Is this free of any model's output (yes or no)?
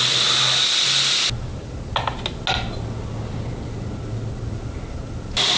yes